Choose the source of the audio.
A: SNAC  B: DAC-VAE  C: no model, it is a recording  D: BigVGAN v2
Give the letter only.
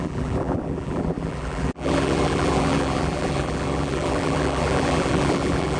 D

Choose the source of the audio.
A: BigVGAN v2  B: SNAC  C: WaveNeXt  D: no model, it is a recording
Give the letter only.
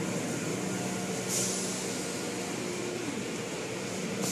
D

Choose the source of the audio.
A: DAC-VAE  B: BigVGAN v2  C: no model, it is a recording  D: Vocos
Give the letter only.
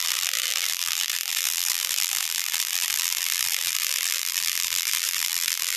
B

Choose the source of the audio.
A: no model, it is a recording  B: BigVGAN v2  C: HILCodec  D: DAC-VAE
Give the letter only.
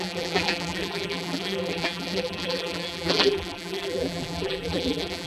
B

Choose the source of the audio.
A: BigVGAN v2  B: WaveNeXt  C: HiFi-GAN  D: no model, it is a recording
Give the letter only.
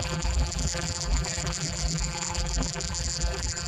A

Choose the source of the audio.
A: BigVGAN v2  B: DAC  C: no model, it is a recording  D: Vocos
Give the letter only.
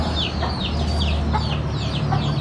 C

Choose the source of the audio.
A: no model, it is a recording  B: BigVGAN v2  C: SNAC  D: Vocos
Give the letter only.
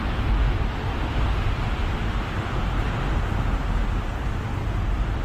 A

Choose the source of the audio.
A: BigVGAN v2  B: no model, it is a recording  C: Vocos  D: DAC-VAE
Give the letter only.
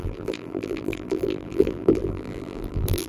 A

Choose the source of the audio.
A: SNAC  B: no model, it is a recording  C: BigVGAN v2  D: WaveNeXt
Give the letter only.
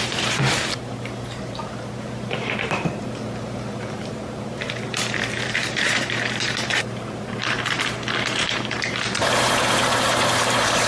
C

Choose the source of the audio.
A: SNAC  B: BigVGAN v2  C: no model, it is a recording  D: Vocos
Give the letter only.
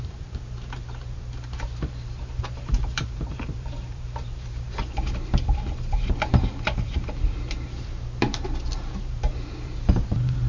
B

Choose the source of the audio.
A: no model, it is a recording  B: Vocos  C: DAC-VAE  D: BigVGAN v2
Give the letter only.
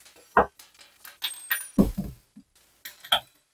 A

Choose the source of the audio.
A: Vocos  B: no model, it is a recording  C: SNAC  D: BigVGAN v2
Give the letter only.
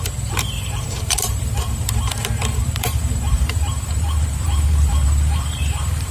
D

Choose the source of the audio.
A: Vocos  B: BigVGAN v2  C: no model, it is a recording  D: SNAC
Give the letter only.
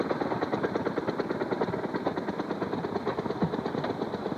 B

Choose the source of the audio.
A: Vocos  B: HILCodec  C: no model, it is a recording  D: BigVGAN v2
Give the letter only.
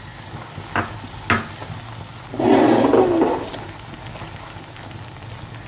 C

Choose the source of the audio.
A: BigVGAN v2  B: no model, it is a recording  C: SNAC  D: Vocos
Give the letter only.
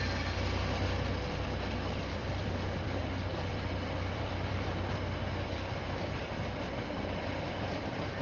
A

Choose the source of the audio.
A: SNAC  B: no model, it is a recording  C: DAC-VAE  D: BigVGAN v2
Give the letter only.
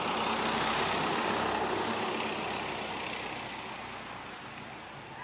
B